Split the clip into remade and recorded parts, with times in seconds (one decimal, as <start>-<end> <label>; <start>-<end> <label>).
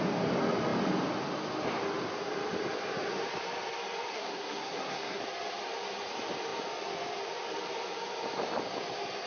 0.0-4.1 recorded; 4.1-5.2 remade; 5.2-9.3 recorded